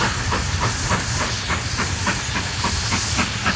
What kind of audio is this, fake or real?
real